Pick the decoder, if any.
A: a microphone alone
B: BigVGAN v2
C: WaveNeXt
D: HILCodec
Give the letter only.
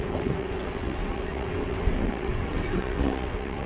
C